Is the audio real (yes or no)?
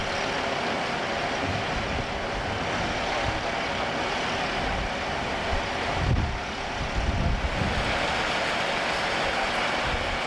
yes